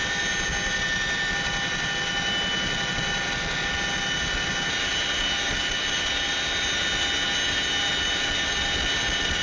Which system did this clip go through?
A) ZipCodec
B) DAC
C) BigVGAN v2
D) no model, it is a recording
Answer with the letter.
D